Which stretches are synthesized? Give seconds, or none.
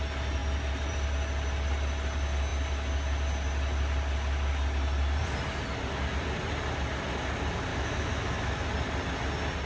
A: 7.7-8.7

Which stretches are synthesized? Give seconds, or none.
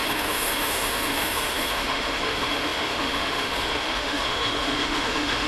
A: 0.0-5.5